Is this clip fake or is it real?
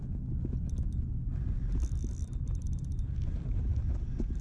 real